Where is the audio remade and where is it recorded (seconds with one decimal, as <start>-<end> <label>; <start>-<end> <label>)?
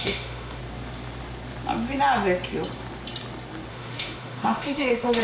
0.0-0.6 remade; 0.6-3.7 recorded; 3.7-5.2 remade